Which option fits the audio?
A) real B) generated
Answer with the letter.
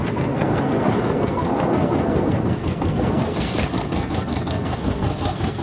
B